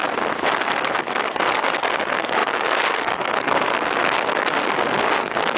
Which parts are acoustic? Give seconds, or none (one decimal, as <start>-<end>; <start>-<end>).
0.0-1.0